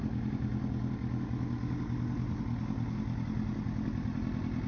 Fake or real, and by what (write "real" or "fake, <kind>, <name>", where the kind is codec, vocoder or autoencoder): real